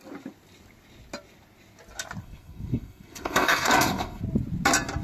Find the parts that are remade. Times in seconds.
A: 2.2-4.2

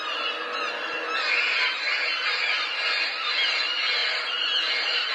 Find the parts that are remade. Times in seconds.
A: none

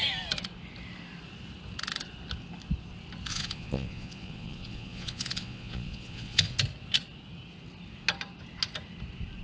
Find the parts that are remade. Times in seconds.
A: 3.3-6.6